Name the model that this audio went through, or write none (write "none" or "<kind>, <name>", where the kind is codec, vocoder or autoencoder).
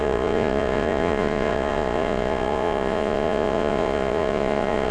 vocoder, Vocos